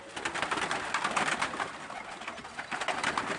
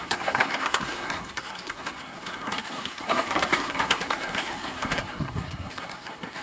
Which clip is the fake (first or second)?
second